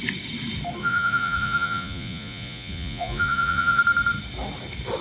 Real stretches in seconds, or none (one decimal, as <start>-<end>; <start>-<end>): 0.0-0.8; 3.8-5.0